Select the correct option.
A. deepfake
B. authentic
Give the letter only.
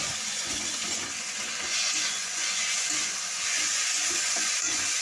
A